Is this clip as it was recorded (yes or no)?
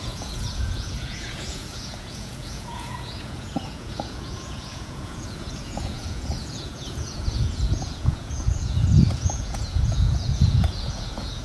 no